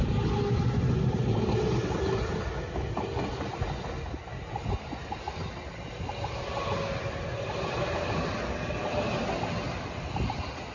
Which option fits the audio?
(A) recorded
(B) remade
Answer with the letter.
A